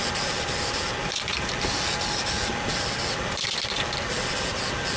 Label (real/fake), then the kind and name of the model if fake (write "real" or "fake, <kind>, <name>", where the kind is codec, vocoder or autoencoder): real